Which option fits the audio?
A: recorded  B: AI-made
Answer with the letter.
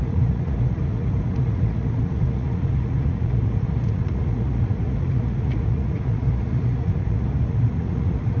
B